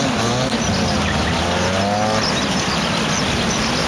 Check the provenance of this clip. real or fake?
real